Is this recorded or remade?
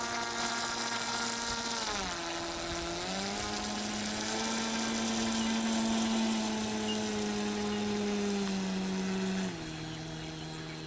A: recorded